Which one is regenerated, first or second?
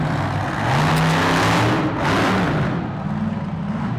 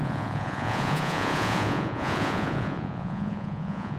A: second